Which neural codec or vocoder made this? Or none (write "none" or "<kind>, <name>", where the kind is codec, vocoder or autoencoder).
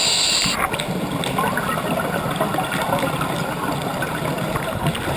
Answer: none